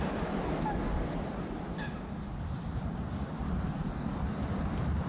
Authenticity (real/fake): real